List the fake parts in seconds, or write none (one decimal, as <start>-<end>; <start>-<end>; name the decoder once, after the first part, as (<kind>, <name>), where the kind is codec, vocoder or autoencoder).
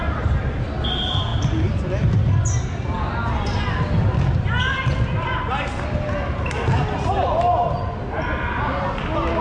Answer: none